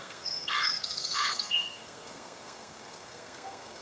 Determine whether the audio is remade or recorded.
remade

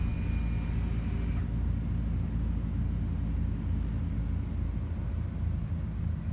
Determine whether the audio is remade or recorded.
recorded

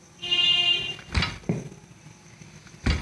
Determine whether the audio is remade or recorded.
recorded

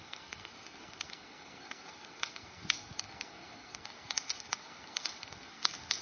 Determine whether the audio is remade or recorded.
remade